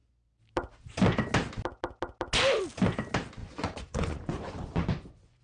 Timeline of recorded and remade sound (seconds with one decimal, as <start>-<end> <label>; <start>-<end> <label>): 0.0-3.4 recorded; 3.4-5.4 remade